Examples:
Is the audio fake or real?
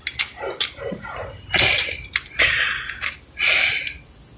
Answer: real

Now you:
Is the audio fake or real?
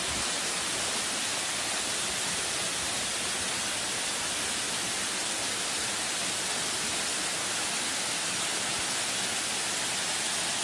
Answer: real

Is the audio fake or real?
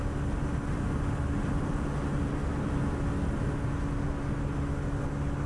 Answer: real